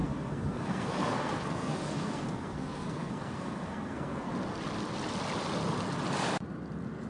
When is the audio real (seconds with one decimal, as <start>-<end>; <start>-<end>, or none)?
4.3-7.1